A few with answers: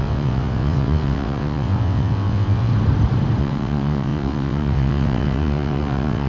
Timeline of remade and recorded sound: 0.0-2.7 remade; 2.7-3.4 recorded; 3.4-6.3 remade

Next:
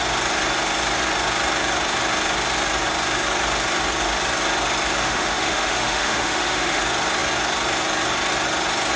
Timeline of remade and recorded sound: 0.0-5.0 recorded; 5.0-6.8 remade; 6.8-9.0 recorded